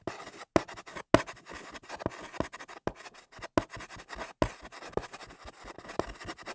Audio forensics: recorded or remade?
recorded